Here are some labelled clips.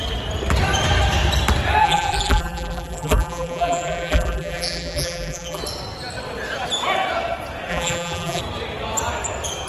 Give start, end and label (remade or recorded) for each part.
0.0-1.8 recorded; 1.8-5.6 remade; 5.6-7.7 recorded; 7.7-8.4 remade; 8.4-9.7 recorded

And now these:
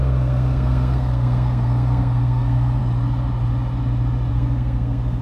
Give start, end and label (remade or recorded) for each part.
0.0-2.8 remade; 2.8-4.3 recorded; 4.3-5.2 remade

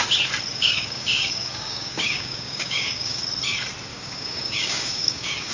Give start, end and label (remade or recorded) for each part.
0.0-0.5 recorded; 0.5-3.2 remade; 3.2-3.9 recorded; 3.9-5.5 remade

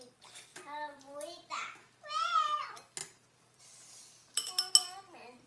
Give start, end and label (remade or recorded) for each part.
0.0-0.5 recorded; 0.5-1.5 remade; 1.5-3.0 recorded; 3.0-4.7 remade; 4.7-5.5 recorded